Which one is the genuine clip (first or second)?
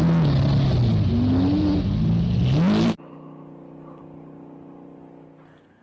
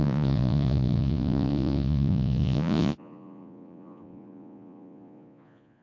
first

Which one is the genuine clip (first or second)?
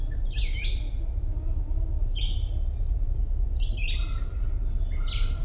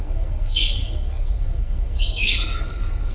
first